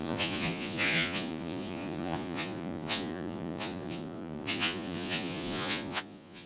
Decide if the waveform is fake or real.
fake